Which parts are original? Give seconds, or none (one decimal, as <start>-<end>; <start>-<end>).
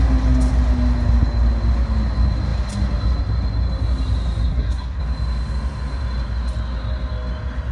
0.0-4.5; 5.0-7.7